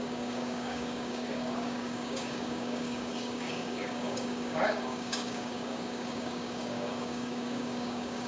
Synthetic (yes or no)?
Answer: yes